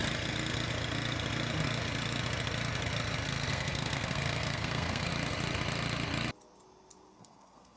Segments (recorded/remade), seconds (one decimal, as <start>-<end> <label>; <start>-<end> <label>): 0.0-3.5 recorded; 3.5-5.1 remade; 5.1-7.1 recorded; 7.1-7.8 remade